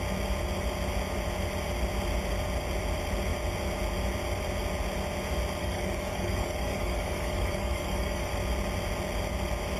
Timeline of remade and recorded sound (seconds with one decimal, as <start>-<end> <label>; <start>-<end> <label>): 0.0-5.6 recorded; 5.6-8.3 remade; 8.3-9.8 recorded